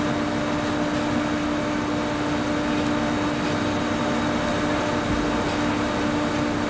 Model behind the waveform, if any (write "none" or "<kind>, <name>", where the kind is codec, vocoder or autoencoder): none